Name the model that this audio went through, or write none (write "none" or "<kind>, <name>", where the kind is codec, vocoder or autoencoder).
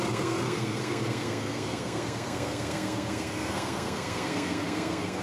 codec, SNAC